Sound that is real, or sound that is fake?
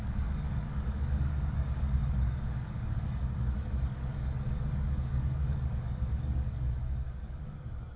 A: fake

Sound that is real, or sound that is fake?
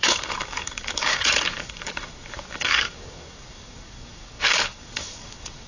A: fake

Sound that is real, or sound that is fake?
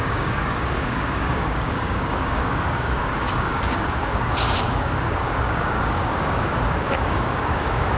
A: fake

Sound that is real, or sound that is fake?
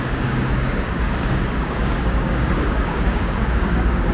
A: fake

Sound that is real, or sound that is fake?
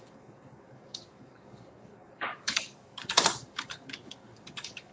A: fake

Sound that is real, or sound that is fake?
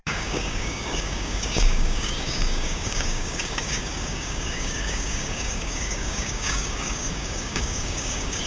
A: fake